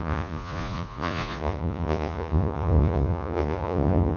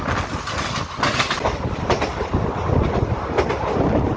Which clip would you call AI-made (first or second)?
first